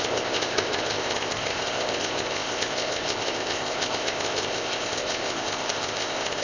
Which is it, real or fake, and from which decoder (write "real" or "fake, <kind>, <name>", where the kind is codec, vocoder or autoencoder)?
fake, codec, ZipCodec